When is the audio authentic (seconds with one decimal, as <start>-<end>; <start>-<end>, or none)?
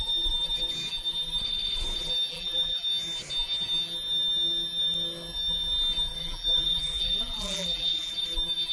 0.0-2.3; 2.9-6.2; 8.1-8.7